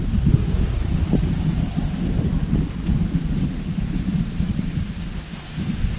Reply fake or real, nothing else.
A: fake